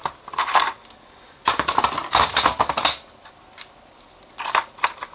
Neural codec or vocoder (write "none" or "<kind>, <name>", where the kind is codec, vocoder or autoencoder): none